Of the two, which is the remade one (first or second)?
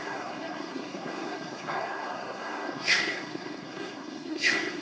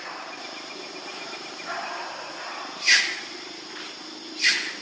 first